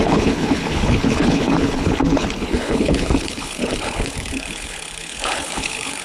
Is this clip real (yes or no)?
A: no